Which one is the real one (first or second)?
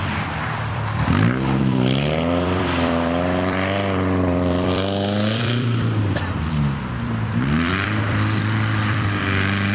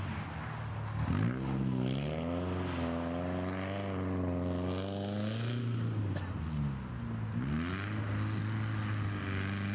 second